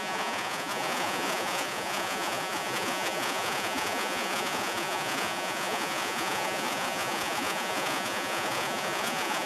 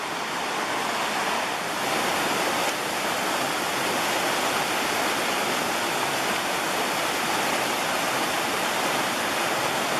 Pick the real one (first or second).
second